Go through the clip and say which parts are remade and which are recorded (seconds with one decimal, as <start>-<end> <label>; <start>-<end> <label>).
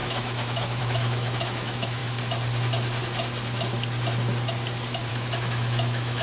0.0-2.0 remade; 2.0-5.1 recorded; 5.1-6.2 remade